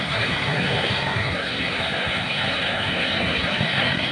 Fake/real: fake